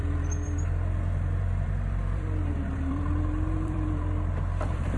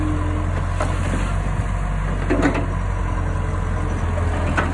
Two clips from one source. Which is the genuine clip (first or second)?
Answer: second